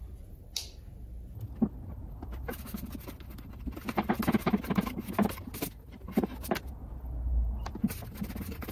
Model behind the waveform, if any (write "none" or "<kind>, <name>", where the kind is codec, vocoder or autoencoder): none